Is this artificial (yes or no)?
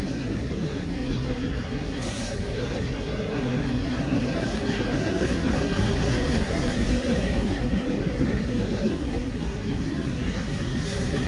yes